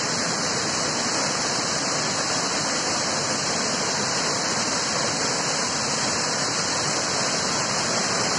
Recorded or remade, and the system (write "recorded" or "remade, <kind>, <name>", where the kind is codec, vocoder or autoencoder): remade, vocoder, BigVGAN v2